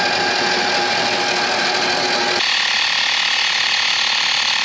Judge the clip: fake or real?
real